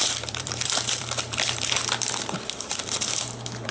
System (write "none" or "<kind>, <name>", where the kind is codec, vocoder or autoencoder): vocoder, BigVGAN v2